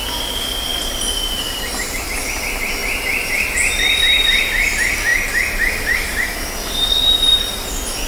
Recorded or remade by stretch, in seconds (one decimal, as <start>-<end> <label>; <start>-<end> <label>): 0.0-0.7 recorded; 0.7-1.4 remade; 1.4-8.1 recorded